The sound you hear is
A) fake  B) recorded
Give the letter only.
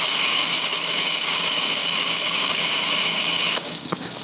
A